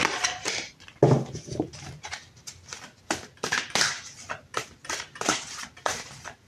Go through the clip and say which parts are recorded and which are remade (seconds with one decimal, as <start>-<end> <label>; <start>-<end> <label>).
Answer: 0.0-0.4 recorded; 0.4-2.1 remade; 2.1-4.5 recorded; 4.5-6.5 remade